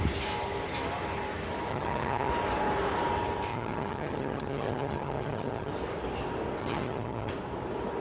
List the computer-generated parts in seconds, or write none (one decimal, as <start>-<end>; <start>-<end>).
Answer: 1.7-2.3; 3.5-5.7; 6.6-7.3